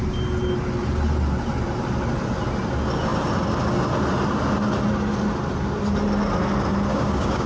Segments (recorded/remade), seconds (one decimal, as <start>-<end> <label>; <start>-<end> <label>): 0.0-6.9 recorded; 6.9-7.5 remade